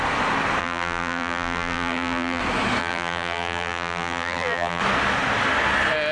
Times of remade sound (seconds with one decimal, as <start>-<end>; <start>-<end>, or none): 0.6-2.4; 2.8-4.8